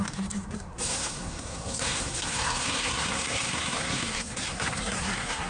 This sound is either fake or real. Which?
fake